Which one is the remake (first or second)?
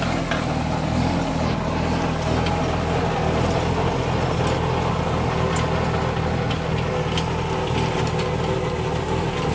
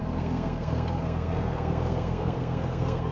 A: second